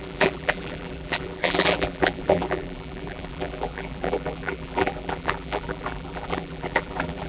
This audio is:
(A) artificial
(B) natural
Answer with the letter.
A